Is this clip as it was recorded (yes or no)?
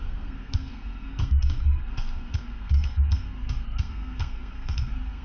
no